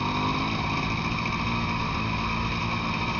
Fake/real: real